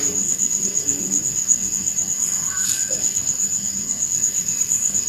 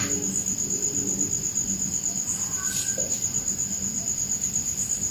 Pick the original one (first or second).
second